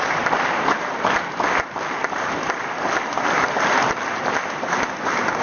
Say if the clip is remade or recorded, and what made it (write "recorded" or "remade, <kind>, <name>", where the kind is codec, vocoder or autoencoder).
recorded